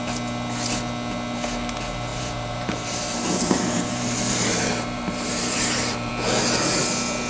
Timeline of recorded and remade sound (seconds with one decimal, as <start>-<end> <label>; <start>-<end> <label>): 0.0-2.1 recorded; 2.1-6.1 remade; 6.1-7.3 recorded